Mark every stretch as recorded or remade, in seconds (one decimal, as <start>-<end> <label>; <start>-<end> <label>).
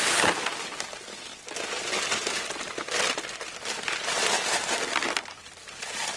0.0-6.2 recorded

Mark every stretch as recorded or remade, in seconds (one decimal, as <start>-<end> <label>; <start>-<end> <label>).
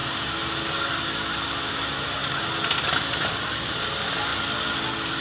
0.0-5.2 recorded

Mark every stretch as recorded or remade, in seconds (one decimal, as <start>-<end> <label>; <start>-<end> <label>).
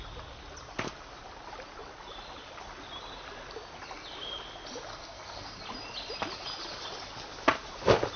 0.0-4.9 recorded; 4.9-5.6 remade; 5.6-8.2 recorded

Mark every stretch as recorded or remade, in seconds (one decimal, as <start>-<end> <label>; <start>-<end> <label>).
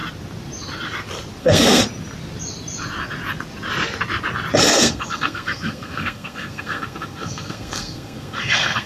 0.0-1.4 recorded; 1.4-1.8 remade; 1.8-4.7 recorded; 4.7-8.9 remade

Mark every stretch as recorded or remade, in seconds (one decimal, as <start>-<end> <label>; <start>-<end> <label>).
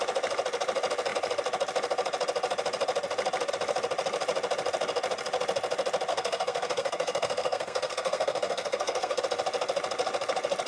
0.0-6.1 recorded; 6.1-9.2 remade; 9.2-10.7 recorded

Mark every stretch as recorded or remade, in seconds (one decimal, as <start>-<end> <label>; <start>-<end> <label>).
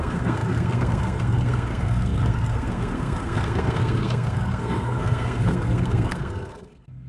0.0-7.1 remade